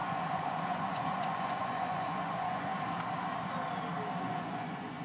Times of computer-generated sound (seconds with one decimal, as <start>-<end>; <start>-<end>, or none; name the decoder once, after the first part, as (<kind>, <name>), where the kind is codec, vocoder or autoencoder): 0.0-2.7 (vocoder, Vocos); 4.2-5.0